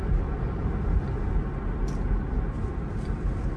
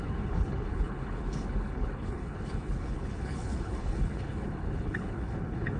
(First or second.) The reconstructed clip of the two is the second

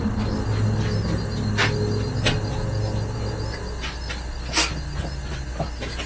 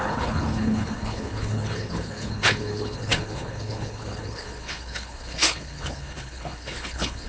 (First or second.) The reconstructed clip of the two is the second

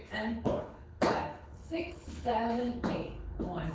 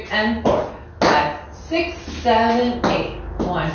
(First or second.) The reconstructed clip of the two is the first